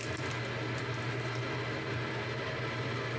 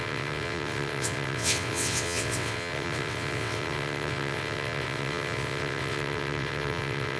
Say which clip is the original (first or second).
first